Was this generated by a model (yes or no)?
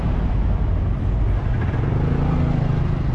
no